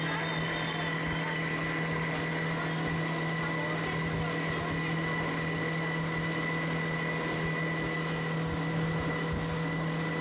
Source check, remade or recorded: recorded